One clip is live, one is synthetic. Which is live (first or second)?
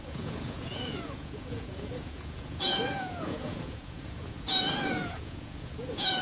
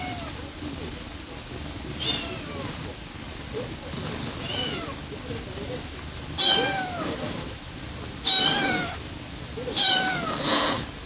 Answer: second